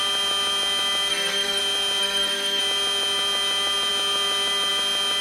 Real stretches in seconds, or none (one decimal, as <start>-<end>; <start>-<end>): 0.0-1.1; 1.6-2.0; 2.6-5.2